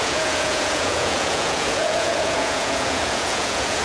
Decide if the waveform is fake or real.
fake